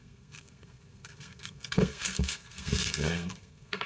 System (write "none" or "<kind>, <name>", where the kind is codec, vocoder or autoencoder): codec, SNAC